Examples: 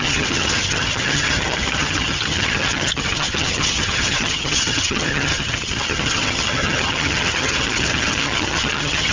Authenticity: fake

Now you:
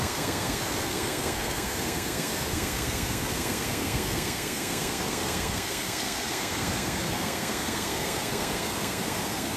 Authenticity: fake